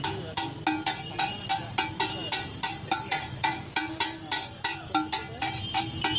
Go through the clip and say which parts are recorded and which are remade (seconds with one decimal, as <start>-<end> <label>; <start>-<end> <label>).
0.0-2.2 recorded; 2.2-3.7 remade; 3.7-6.2 recorded